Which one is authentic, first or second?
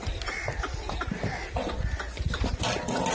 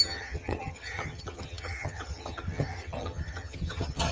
first